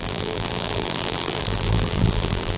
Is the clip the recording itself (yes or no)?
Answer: no